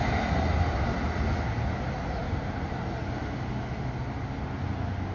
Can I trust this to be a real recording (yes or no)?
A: yes